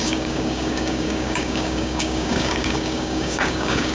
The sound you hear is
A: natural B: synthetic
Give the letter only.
B